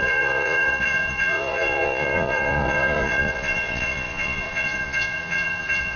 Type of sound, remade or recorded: remade